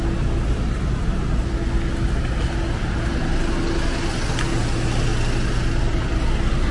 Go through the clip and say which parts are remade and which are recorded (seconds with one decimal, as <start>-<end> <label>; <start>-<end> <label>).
0.0-6.7 recorded